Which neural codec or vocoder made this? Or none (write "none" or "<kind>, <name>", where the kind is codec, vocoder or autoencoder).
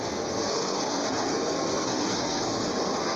codec, SNAC